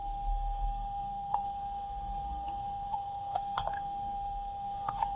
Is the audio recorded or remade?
remade